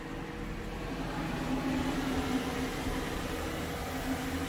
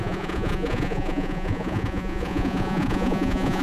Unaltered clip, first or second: first